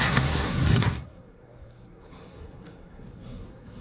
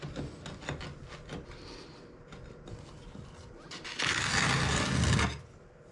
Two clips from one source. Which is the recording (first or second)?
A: second